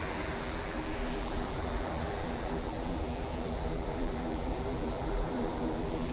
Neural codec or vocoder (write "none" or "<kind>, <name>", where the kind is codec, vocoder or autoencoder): vocoder, BigVGAN v2